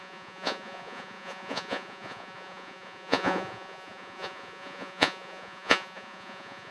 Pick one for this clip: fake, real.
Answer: fake